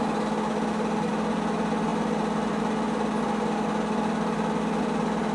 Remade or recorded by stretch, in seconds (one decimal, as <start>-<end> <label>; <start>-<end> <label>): 0.0-5.3 recorded